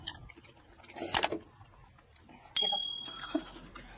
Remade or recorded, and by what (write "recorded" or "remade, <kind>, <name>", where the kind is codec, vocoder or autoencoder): recorded